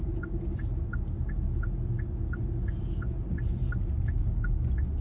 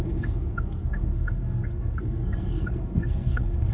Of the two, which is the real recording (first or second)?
first